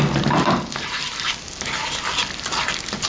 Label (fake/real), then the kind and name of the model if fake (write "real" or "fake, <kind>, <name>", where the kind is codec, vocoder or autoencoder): real